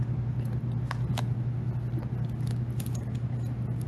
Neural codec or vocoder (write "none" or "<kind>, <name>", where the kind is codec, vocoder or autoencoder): none